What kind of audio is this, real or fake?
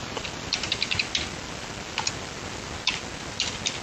real